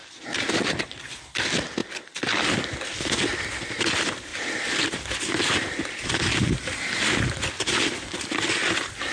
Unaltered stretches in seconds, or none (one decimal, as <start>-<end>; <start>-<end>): 1.3-4.3; 6.0-9.1